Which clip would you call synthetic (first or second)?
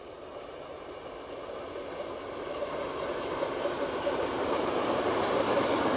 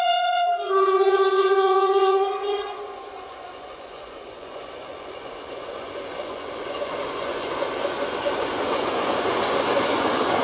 second